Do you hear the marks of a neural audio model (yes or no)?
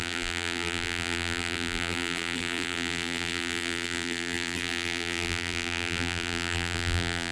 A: yes